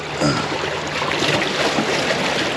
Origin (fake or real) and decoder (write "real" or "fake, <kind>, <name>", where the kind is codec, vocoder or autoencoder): real